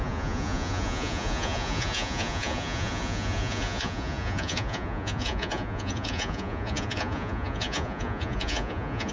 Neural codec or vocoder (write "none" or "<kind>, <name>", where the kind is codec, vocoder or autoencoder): vocoder, Vocos